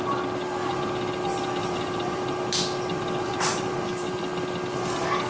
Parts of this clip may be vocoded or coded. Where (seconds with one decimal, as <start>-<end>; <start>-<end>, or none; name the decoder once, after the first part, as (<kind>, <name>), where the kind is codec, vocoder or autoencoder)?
1.6-2.2 (vocoder, BigVGAN v2); 3.3-4.2